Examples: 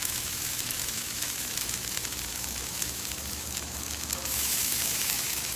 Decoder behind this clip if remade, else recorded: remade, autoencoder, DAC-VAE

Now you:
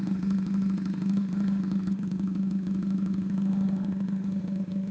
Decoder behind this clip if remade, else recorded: remade, autoencoder, DAC-VAE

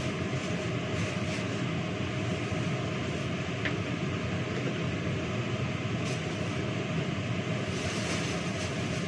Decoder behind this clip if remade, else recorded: recorded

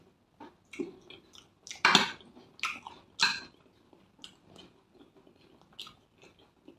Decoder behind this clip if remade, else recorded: recorded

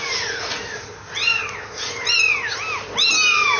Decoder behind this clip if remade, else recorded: recorded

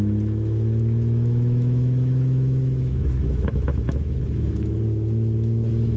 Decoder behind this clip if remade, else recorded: remade, autoencoder, DAC-VAE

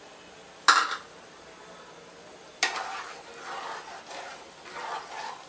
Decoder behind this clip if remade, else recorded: recorded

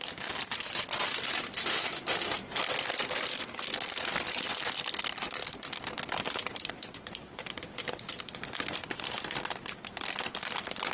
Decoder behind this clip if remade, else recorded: recorded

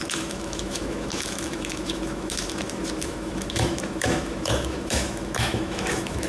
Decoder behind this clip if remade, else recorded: remade, autoencoder, DAC-VAE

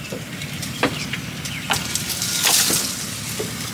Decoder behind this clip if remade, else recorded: recorded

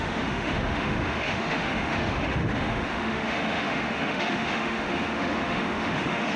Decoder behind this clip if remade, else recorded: remade, autoencoder, DAC-VAE